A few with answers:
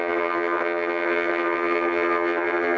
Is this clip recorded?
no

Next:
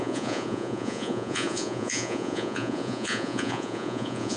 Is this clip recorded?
no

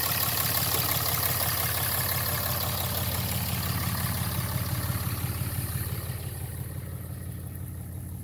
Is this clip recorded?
yes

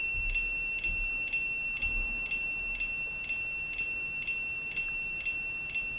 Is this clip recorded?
yes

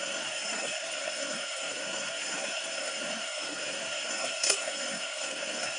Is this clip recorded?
no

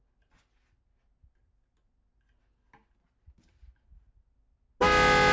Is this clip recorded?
yes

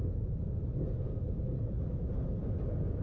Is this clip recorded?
yes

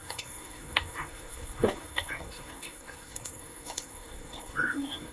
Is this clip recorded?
no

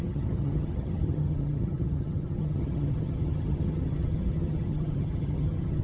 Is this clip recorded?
no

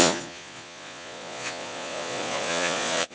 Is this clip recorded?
no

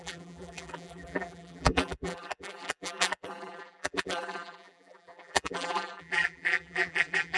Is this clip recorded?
no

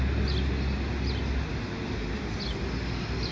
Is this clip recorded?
yes